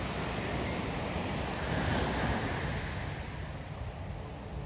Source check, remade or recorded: recorded